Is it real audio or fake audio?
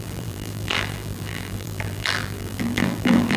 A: fake